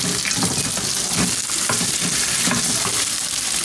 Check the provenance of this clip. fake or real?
real